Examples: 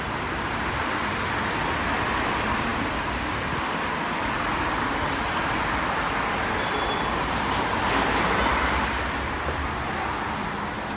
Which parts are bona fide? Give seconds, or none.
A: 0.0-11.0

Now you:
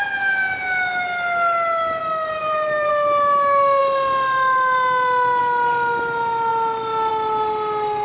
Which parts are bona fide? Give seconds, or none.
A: 0.0-2.4; 2.9-8.0

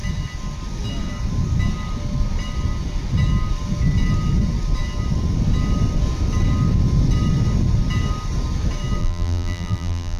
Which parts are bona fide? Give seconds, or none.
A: 0.0-9.0

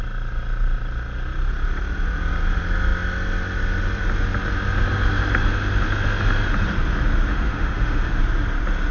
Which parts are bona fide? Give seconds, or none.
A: 0.0-7.3; 8.2-8.9

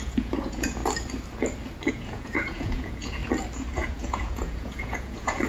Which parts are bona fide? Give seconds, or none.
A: 0.8-1.9; 3.2-3.7